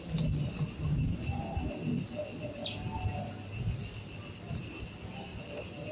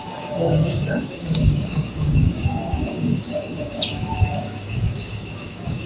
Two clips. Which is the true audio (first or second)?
first